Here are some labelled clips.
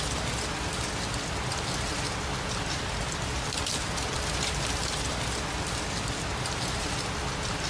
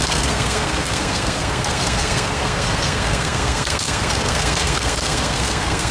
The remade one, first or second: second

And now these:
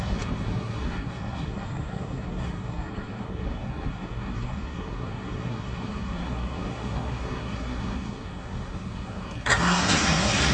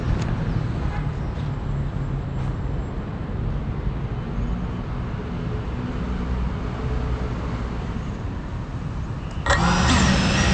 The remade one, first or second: first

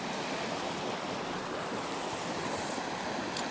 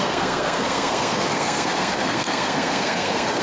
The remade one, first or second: second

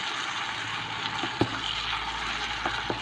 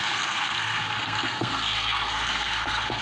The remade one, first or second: second